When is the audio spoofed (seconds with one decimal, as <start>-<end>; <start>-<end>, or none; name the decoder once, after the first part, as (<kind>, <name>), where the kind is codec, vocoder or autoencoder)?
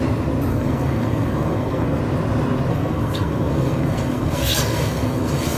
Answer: 0.5-2.0 (codec, SNAC); 2.7-5.6